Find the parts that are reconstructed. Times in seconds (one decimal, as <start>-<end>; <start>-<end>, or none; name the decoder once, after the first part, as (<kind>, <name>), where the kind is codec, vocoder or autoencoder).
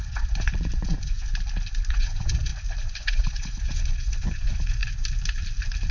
0.0-1.3 (vocoder, Vocos); 1.9-2.5; 3.0-4.8